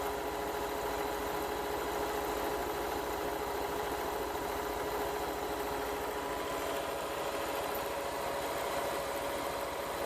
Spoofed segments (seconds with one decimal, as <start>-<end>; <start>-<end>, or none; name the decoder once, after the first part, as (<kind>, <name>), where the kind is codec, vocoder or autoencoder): 2.6-4.6 (vocoder, BigVGAN v2)